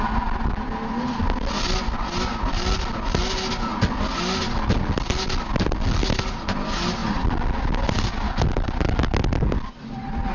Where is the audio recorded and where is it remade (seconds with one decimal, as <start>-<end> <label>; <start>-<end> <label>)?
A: 0.0-10.3 recorded